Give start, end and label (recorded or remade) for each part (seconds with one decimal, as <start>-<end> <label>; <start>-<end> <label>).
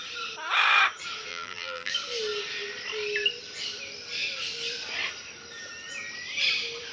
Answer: 0.0-1.3 recorded; 1.3-1.9 remade; 1.9-6.9 recorded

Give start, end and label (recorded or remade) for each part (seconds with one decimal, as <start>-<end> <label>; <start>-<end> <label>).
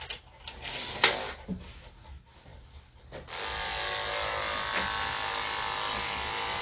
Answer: 0.0-6.6 recorded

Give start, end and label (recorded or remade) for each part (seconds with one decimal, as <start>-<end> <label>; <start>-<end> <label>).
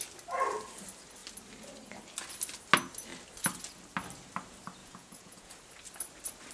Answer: 0.0-4.8 recorded; 4.8-5.5 remade; 5.5-6.5 recorded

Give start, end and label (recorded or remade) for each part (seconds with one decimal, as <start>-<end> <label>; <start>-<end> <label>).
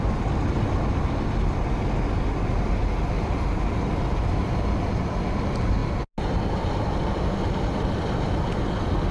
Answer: 0.0-9.1 recorded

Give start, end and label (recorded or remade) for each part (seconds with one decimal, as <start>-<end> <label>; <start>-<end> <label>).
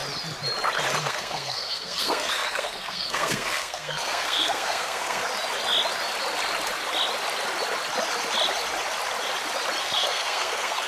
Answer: 0.0-1.0 recorded; 1.0-5.2 remade; 5.2-9.8 recorded; 9.8-10.9 remade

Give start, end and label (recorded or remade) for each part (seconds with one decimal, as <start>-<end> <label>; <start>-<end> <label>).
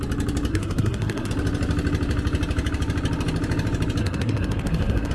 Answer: 0.0-0.5 recorded; 0.5-1.3 remade; 1.3-4.0 recorded; 4.0-5.1 remade